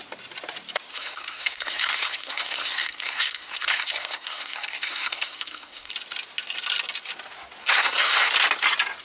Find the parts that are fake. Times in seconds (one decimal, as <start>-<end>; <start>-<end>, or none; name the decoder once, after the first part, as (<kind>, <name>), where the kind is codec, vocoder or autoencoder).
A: 0.9-5.9 (codec, SNAC); 7.6-8.3